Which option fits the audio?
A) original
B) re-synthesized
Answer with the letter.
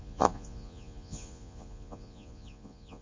B